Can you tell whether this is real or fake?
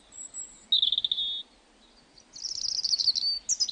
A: real